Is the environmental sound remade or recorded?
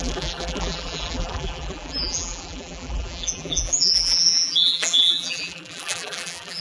remade